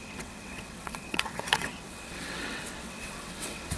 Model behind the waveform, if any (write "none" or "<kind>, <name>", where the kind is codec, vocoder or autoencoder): vocoder, WaveNeXt